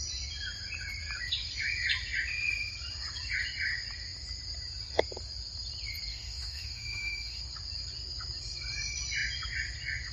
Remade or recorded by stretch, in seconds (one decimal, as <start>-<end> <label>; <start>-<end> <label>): 0.0-6.1 recorded; 6.1-7.4 remade; 7.4-10.1 recorded